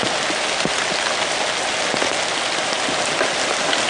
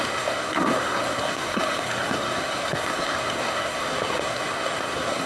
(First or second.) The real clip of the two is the first